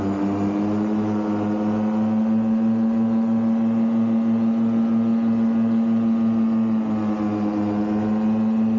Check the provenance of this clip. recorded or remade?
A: recorded